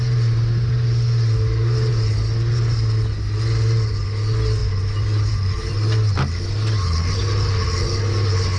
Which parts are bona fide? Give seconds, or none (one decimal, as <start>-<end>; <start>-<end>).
0.0-8.6